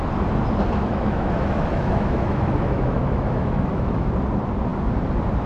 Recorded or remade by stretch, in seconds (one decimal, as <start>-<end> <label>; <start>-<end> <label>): 0.0-0.8 recorded; 0.8-4.1 remade; 4.1-5.5 recorded